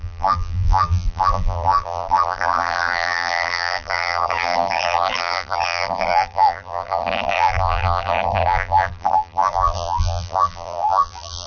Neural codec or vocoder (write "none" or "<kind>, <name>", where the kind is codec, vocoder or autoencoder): vocoder, BigVGAN v2